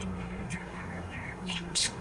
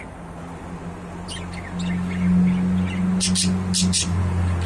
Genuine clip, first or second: second